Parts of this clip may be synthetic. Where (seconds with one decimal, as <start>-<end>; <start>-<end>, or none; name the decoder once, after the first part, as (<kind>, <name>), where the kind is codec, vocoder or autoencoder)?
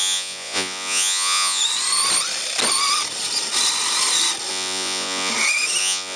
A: 0.0-1.6 (vocoder, Vocos); 4.5-5.3; 5.8-6.2